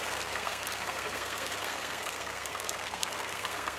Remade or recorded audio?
remade